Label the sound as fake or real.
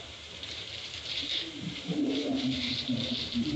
fake